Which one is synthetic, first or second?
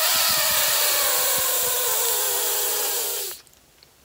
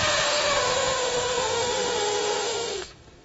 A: second